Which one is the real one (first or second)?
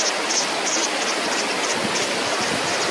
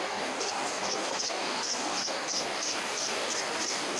first